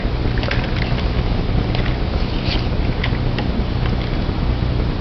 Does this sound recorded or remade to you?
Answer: recorded